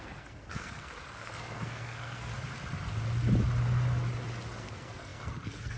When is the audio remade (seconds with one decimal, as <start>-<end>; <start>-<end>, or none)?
0.0-2.3; 4.6-5.8